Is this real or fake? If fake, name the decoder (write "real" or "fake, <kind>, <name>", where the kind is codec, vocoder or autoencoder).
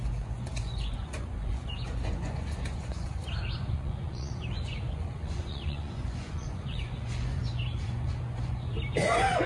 fake, vocoder, Vocos